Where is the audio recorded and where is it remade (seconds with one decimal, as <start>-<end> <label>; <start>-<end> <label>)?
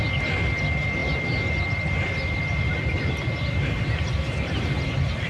0.0-5.3 recorded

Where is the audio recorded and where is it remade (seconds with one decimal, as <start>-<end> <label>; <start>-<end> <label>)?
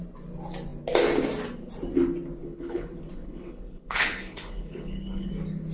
0.0-2.4 recorded; 2.4-5.3 remade; 5.3-5.7 recorded